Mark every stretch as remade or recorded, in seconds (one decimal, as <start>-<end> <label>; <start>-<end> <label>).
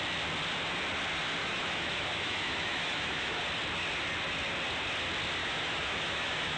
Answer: 0.0-1.4 recorded; 1.4-3.4 remade; 3.4-5.4 recorded; 5.4-6.6 remade